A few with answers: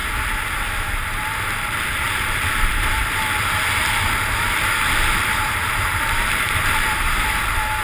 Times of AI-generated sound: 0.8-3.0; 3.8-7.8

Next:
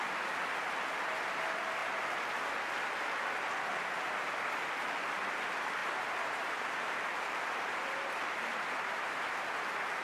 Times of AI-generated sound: 5.8-8.6

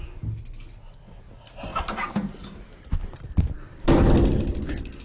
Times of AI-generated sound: 1.7-2.7

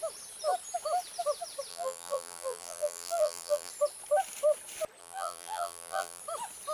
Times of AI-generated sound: 1.7-3.7; 5.0-6.2

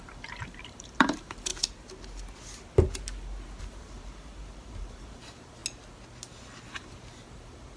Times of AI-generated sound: 0.0-1.5; 3.6-5.6; 6.7-7.8

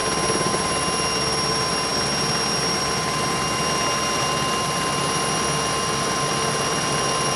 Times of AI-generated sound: none

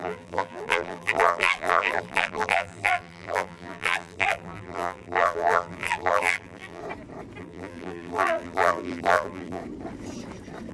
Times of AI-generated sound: 0.0-6.8; 7.4-9.6

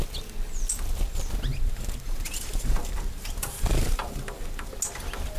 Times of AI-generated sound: 1.5-4.7